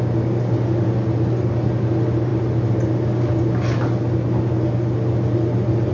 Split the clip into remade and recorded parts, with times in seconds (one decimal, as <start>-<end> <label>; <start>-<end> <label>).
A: 0.0-5.9 recorded